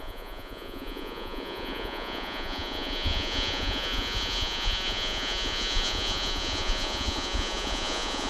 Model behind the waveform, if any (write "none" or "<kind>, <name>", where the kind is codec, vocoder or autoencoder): vocoder, Vocos